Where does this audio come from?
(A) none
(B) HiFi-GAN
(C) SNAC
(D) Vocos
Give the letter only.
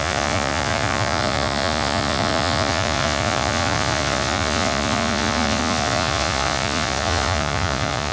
D